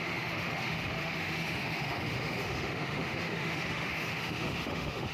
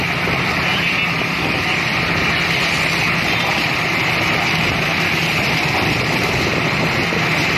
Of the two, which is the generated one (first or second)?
first